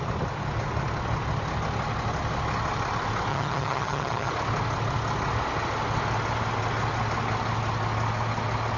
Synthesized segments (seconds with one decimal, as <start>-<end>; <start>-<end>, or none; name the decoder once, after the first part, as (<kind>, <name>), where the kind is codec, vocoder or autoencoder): 3.3-4.3 (vocoder, HiFi-GAN)